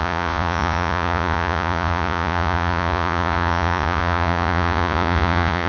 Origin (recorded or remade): remade